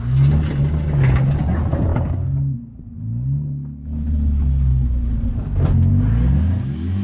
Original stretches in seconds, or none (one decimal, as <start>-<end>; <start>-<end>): 0.0-7.0